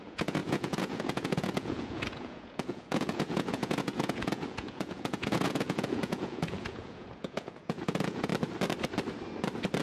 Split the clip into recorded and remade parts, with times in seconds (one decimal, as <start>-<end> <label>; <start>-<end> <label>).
0.0-8.3 remade; 8.3-9.8 recorded